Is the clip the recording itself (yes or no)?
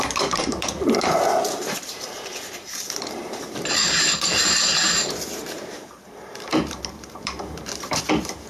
no